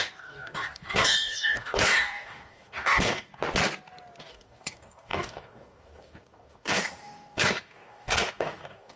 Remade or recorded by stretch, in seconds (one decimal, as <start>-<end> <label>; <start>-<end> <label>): 0.0-3.3 remade; 3.3-4.2 recorded; 4.2-9.0 remade